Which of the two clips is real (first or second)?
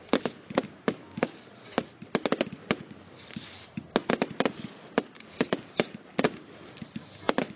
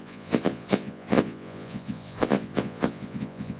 first